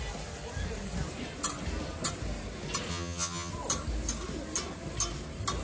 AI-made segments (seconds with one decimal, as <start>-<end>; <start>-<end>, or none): 2.9-3.5

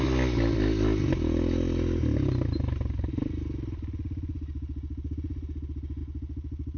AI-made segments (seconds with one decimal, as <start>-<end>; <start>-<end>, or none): none

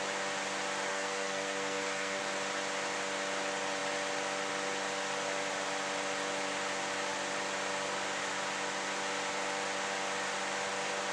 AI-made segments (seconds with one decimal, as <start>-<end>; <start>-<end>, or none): 0.9-2.2

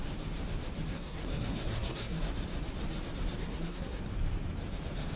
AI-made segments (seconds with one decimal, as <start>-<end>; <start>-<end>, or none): 0.9-2.2; 3.4-4.0